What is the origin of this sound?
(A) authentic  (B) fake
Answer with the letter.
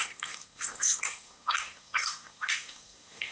B